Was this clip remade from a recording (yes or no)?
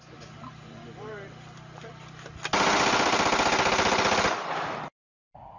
no